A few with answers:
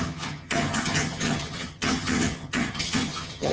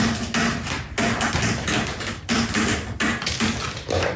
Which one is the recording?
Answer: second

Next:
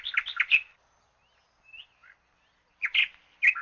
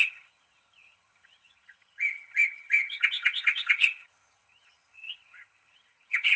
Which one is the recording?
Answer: first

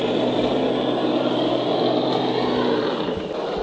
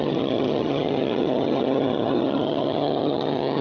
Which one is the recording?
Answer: first